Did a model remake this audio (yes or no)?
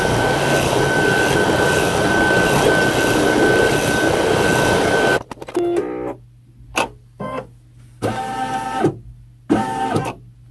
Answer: no